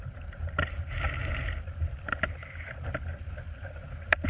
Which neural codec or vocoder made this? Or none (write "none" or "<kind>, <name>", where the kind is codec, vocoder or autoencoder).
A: none